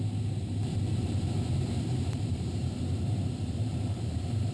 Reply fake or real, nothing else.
fake